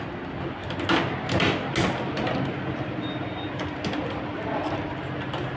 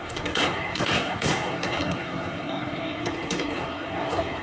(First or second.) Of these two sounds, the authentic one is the first